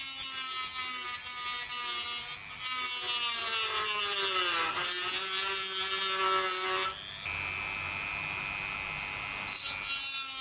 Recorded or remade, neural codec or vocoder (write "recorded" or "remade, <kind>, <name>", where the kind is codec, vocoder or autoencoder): recorded